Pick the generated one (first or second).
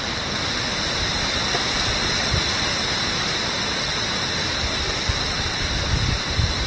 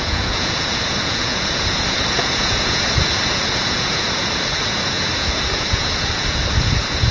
second